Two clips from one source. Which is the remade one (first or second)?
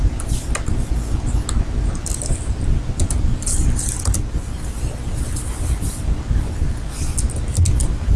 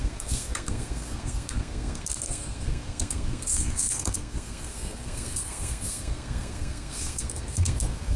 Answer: second